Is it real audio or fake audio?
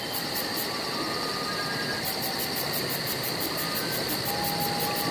real